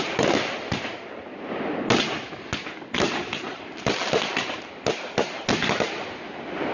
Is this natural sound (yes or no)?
yes